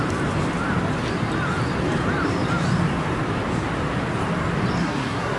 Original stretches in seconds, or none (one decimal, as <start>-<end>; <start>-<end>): 0.0-4.8